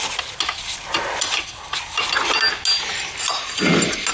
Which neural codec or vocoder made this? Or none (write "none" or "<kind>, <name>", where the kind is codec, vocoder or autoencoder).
none